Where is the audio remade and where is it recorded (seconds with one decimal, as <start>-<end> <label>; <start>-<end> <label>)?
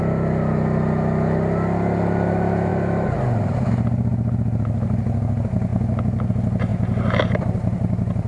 0.0-8.3 recorded